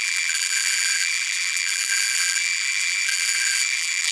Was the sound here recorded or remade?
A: remade